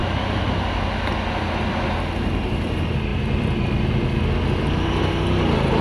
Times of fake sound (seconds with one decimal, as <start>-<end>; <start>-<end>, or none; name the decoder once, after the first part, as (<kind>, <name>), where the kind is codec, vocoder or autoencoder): none

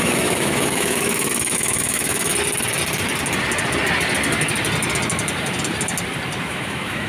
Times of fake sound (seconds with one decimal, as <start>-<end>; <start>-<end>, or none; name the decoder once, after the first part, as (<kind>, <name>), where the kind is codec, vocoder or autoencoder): 0.0-2.3 (autoencoder, DAC-VAE); 6.4-7.1

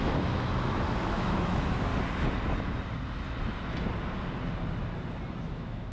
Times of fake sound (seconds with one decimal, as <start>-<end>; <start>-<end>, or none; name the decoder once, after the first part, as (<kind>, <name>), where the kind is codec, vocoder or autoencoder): 0.0-1.9 (autoencoder, DAC-VAE); 5.4-5.9